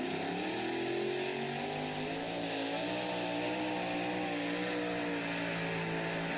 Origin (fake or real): real